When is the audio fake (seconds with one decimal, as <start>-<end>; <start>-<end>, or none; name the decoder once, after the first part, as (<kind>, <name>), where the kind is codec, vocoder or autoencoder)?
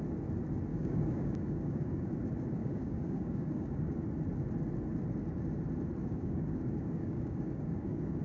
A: 0.7-2.1 (codec, DAC); 2.6-3.9; 6.0-8.2